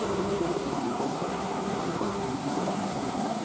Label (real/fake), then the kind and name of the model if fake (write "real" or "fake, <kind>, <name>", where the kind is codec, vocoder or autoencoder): fake, codec, SNAC